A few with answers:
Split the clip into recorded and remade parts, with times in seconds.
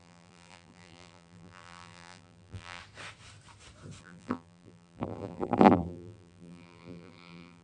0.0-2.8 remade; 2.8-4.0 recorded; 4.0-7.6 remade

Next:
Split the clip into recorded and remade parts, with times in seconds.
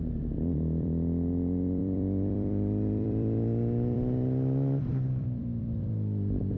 0.0-6.6 remade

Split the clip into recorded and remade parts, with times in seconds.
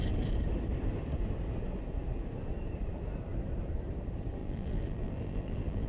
0.0-4.4 recorded; 4.4-5.9 remade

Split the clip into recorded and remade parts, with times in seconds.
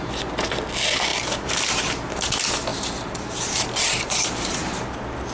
0.0-2.7 recorded; 2.7-4.5 remade; 4.5-5.3 recorded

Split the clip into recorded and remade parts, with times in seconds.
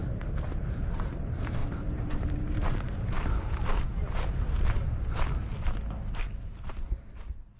0.0-0.6 recorded; 0.6-1.2 remade; 1.2-1.6 recorded; 1.6-5.4 remade; 5.4-7.6 recorded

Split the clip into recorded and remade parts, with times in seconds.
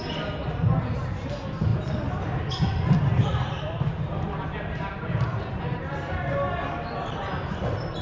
0.0-3.3 recorded; 3.3-5.5 remade; 5.5-8.0 recorded